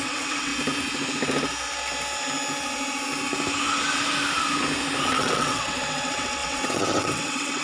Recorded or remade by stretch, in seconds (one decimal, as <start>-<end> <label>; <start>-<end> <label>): 0.0-0.5 remade; 0.5-5.0 recorded; 5.0-7.6 remade